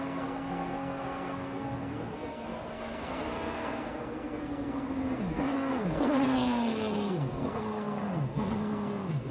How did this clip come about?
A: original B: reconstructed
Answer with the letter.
B